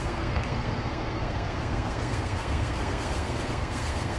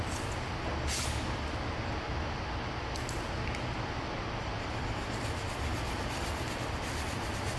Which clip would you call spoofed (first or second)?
first